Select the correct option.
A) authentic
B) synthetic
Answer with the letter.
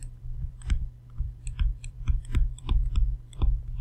B